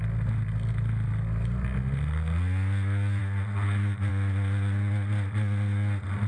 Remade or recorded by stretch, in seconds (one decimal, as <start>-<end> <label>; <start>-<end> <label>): 0.0-6.3 recorded